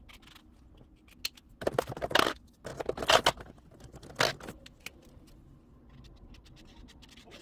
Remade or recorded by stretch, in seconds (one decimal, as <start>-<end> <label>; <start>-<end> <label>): 0.0-2.7 recorded; 2.7-5.4 remade; 5.4-7.4 recorded